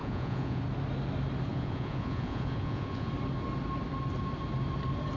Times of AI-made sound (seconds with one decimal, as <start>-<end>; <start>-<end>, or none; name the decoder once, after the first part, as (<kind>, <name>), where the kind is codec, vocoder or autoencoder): 0.0-0.6 (vocoder, Vocos); 1.5-3.1